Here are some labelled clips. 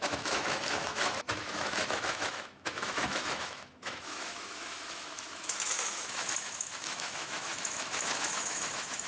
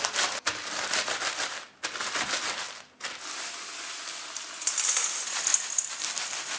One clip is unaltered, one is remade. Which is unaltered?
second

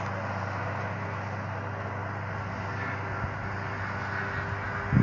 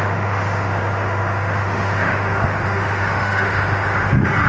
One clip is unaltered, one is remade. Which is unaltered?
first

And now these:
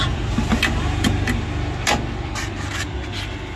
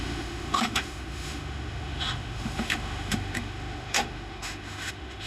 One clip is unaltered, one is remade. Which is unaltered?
first